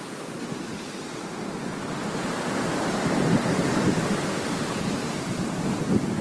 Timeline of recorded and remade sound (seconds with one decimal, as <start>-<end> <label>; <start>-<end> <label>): 0.0-1.6 recorded; 1.6-5.3 remade; 5.3-6.2 recorded